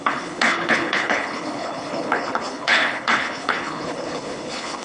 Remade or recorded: remade